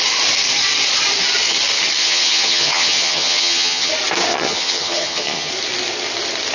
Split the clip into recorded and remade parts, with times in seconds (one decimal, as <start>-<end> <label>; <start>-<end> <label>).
0.0-2.0 recorded; 2.0-3.9 remade; 3.9-4.3 recorded; 4.3-5.5 remade; 5.5-6.5 recorded